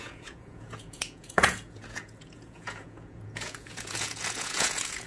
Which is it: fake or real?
fake